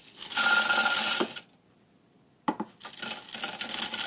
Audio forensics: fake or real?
real